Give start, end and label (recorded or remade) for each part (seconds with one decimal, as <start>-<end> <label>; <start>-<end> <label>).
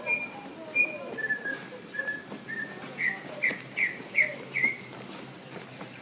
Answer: 0.0-2.2 recorded; 2.2-6.0 remade